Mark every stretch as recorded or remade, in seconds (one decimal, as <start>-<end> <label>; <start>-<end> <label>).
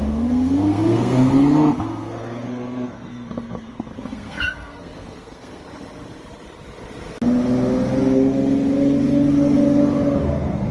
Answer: 0.0-5.6 remade; 5.6-10.2 recorded; 10.2-10.7 remade